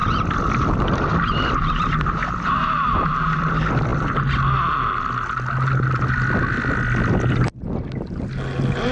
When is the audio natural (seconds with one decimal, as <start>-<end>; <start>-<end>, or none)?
3.5-8.9